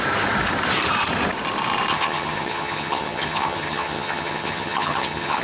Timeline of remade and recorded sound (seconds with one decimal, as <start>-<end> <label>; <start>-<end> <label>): 0.0-1.9 recorded; 1.9-5.4 remade